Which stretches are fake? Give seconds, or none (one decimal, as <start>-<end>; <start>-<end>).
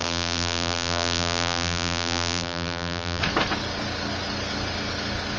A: 0.0-3.2